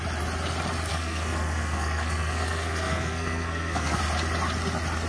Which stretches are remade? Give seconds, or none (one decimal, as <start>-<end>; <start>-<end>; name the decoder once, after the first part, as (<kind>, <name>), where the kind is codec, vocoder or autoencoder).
0.9-4.0 (codec, SNAC)